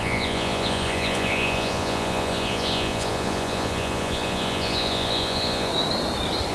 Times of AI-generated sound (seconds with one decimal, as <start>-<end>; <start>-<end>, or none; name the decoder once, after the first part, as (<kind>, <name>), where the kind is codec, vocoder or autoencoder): 0.0-5.7 (vocoder, Vocos)